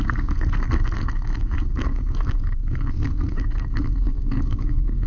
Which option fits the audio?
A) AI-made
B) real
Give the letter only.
A